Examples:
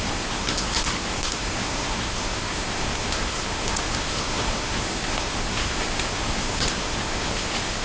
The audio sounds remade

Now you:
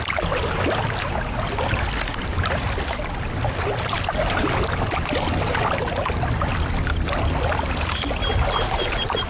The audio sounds recorded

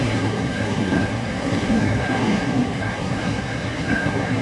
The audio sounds remade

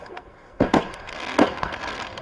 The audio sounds remade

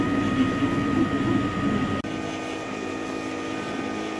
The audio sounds recorded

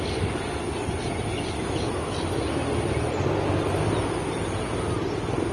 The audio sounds recorded